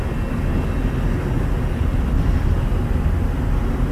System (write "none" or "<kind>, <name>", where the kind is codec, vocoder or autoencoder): none